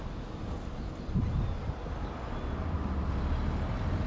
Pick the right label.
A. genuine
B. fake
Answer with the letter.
A